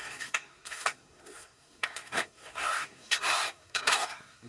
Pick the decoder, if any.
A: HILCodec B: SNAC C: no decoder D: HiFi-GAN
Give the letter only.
B